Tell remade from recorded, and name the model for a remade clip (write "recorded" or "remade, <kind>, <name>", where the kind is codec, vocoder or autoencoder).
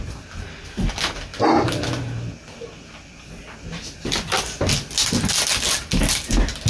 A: recorded